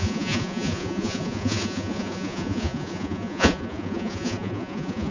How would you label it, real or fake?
fake